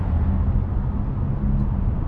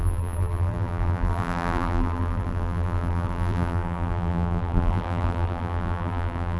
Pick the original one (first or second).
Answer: first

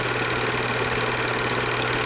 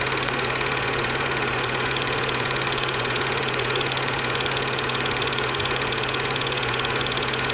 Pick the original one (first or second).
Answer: first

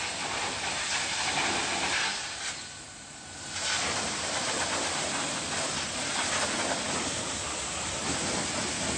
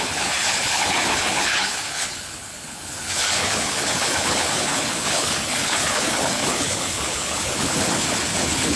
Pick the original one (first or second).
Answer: first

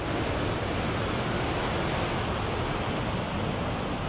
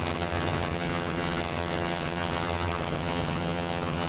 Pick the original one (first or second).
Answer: first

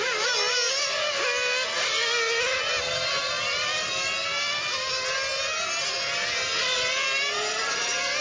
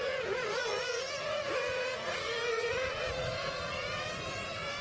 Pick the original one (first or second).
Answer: first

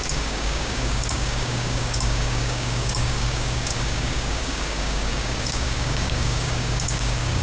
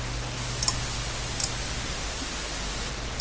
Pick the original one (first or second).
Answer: second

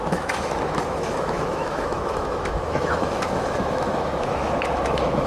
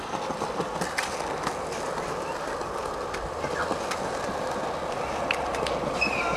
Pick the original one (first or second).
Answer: second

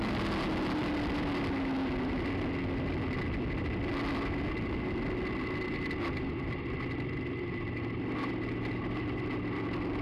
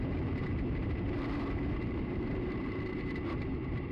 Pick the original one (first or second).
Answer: first